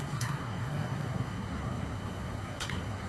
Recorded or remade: remade